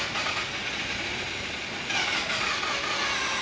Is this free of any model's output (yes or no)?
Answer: yes